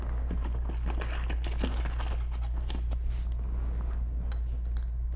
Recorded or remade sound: recorded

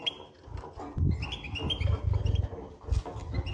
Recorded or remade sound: recorded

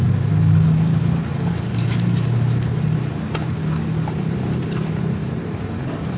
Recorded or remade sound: recorded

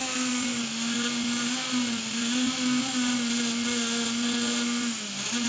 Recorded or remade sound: recorded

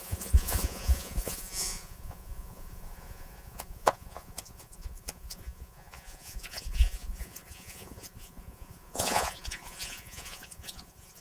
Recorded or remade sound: remade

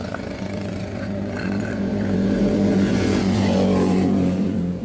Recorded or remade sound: remade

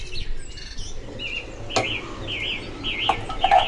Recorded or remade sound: recorded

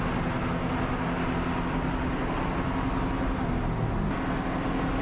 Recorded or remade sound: recorded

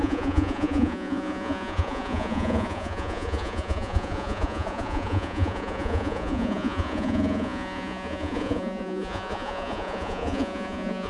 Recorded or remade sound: remade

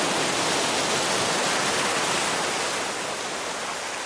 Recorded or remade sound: recorded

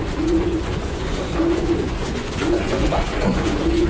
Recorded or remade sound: remade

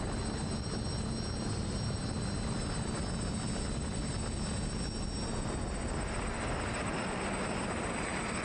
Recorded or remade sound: recorded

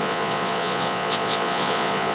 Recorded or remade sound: remade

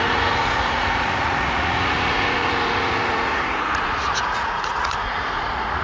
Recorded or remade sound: remade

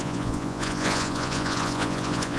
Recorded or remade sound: remade